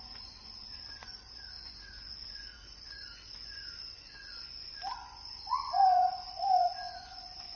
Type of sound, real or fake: fake